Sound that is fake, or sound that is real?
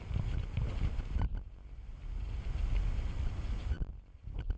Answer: real